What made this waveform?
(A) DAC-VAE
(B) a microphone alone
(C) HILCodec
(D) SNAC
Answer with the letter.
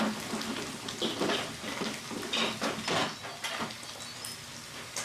B